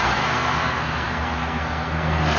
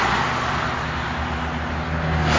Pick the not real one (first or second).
first